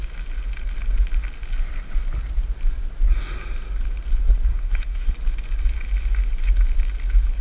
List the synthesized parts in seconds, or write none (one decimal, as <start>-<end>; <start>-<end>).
4.5-5.1